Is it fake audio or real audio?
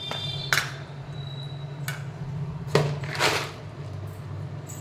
real